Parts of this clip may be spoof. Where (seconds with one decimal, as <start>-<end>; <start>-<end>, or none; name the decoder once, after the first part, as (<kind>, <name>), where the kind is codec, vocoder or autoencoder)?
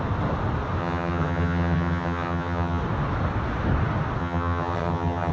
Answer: 0.8-2.8 (vocoder, HiFi-GAN); 4.2-5.3